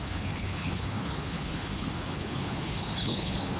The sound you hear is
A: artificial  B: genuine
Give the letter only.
A